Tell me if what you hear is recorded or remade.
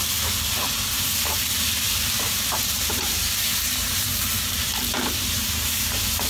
remade